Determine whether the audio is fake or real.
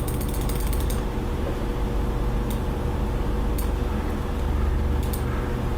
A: real